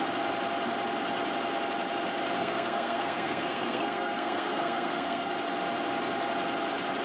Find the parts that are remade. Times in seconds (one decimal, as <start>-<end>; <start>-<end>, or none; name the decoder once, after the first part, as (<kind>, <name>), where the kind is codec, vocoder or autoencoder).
2.4-5.3 (codec, SNAC)